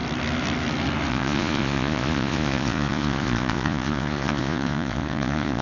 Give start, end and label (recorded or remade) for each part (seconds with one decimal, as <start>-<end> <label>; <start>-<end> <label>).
0.0-1.1 recorded; 1.1-5.6 remade